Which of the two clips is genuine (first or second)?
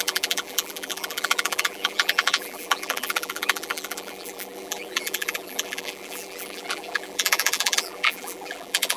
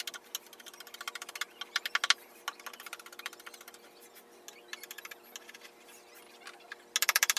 second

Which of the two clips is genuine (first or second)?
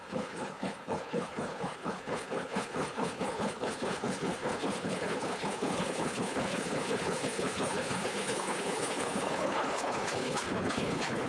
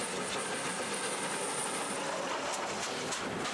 second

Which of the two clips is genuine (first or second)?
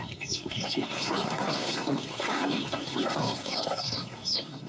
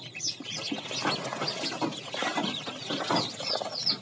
second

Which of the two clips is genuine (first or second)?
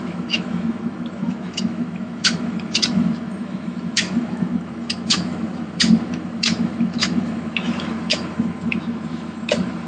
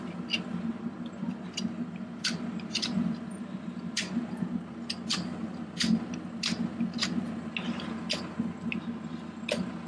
second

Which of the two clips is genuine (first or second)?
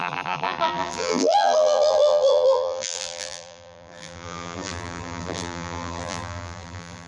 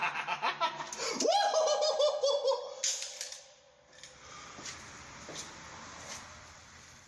second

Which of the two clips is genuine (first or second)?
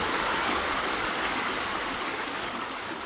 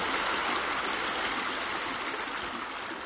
second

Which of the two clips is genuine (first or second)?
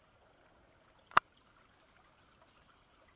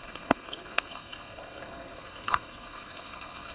first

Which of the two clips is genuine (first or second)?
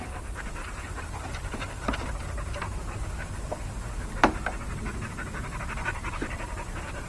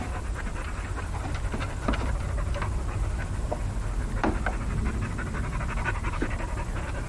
second